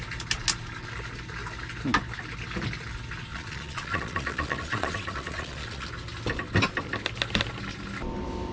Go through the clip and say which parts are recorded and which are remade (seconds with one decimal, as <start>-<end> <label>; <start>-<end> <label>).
0.0-3.3 recorded; 3.3-5.9 remade; 5.9-8.5 recorded